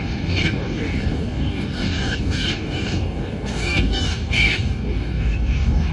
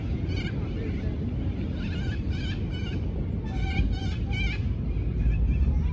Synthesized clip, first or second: first